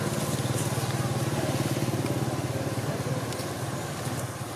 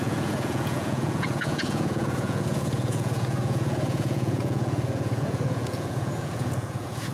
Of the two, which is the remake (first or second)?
second